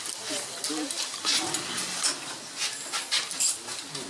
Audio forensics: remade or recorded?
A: recorded